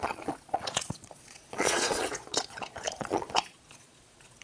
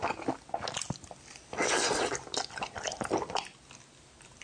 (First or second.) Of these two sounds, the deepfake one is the first